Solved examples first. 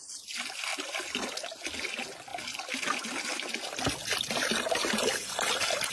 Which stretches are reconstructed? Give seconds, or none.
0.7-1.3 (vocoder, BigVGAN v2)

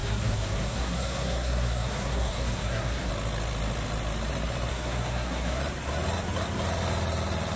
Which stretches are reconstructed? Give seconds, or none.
0.0-3.1 (codec, SNAC); 4.7-5.6